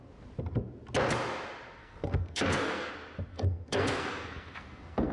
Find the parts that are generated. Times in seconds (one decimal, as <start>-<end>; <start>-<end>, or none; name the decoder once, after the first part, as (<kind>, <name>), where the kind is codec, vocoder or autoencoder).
1.8-2.9 (codec, SNAC); 3.3-5.1